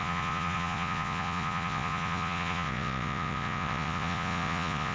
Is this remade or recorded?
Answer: remade